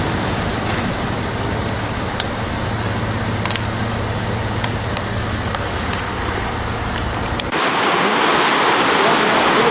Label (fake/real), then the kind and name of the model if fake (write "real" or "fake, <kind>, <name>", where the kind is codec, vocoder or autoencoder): real